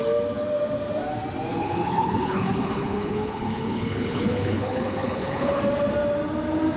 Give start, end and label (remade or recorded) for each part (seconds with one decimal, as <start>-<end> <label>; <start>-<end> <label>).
0.0-1.5 recorded; 1.5-5.6 remade; 5.6-6.8 recorded